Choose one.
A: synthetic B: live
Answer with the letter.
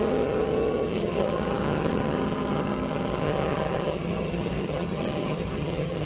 A